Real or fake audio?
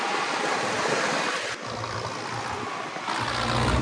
real